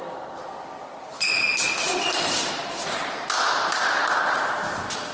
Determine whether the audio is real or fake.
real